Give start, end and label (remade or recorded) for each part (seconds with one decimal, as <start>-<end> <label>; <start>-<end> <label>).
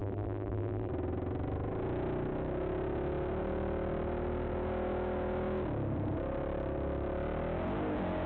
0.0-0.9 remade; 0.9-8.3 recorded